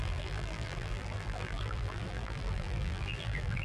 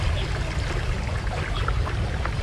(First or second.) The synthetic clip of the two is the first